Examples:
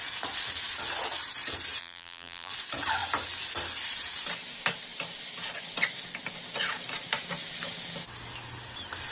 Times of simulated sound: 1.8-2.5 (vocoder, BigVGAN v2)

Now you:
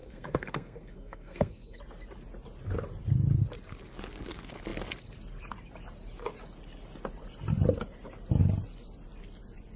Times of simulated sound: 0.0-1.8 (codec, SNAC)

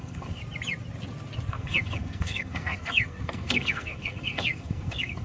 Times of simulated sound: 0.0-0.4 (codec, SNAC); 1.5-5.2

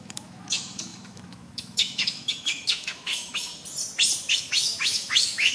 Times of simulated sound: 0.0-3.5 (autoencoder, DAC-VAE); 4.3-5.5

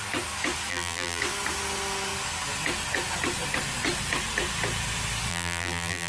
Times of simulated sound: 0.7-1.2 (vocoder, BigVGAN v2); 5.3-6.1

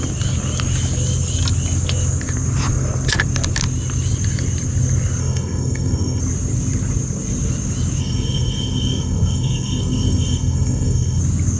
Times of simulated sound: 5.2-6.2 (codec, SNAC); 8.0-11.2

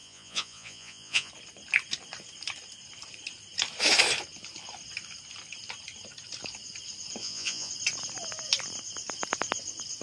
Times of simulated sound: 0.0-1.3 (vocoder, Vocos); 7.2-7.7